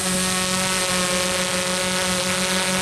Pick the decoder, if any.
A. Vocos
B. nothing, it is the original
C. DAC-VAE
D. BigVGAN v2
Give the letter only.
B